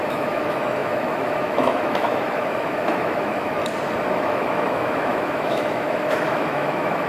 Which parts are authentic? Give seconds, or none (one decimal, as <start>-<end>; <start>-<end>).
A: 3.6-4.2